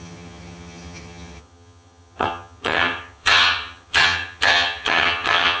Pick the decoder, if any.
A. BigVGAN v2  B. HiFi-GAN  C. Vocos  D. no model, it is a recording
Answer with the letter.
B